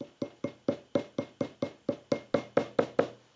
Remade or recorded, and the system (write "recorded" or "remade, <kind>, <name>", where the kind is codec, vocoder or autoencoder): recorded